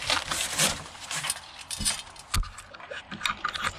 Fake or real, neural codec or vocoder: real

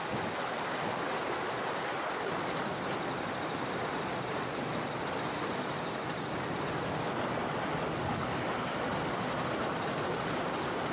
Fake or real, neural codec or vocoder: real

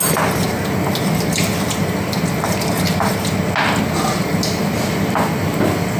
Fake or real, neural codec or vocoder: real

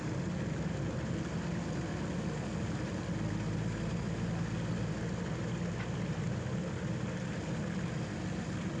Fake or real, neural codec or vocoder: real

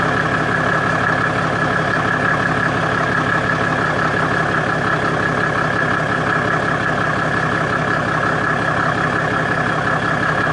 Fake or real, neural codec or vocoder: real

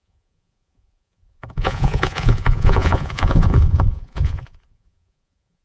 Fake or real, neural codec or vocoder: fake, vocoder, Vocos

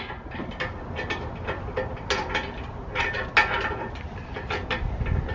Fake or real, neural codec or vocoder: real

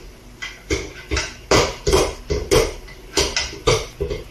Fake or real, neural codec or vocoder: fake, vocoder, BigVGAN v2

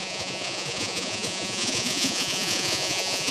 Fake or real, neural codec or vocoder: fake, vocoder, Vocos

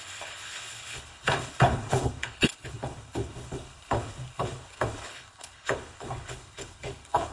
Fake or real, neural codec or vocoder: fake, codec, HILCodec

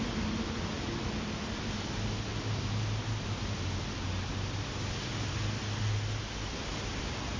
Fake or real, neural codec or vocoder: real